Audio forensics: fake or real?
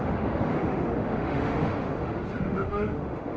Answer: fake